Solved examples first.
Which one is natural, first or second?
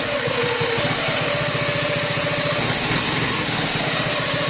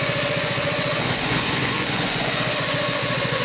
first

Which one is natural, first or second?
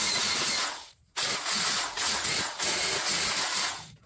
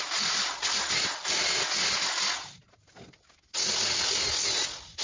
second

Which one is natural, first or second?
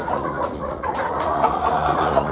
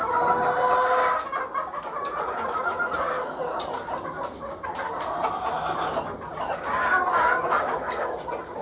second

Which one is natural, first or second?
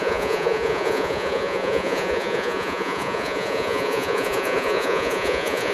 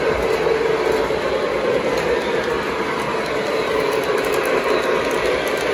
second